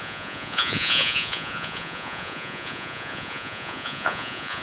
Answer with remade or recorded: remade